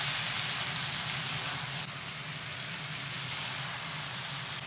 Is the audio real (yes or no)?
no